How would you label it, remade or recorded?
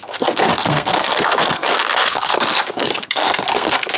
remade